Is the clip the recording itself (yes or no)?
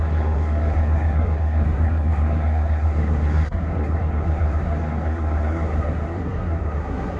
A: no